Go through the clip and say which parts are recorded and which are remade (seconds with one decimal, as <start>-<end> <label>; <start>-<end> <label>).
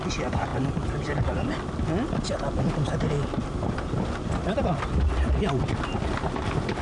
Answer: 0.0-6.8 recorded